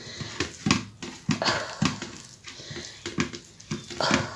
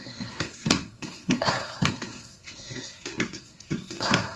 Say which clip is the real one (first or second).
first